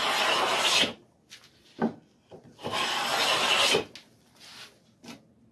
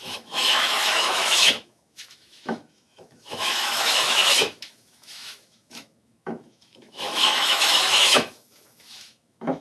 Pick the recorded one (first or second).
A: first